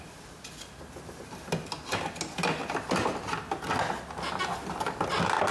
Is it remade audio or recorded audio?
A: recorded